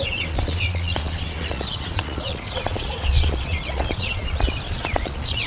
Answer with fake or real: fake